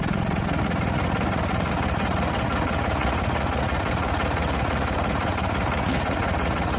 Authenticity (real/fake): fake